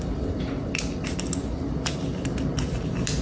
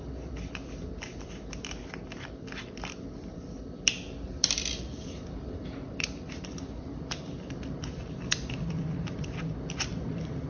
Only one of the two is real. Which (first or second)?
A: first